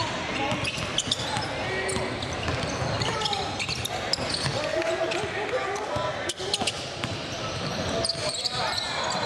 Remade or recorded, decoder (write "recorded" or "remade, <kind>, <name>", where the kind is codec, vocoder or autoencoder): recorded